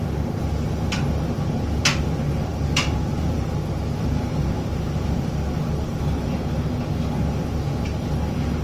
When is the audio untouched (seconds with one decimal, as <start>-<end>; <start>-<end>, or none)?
0.0-2.5; 3.6-4.0; 5.2-8.6